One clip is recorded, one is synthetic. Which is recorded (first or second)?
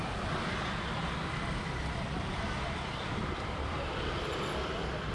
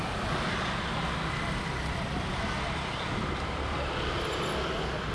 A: second